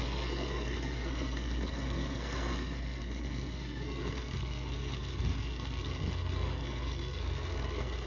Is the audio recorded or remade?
remade